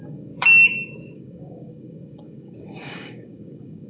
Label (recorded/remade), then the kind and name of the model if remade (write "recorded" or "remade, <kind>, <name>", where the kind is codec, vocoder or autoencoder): remade, codec, DAC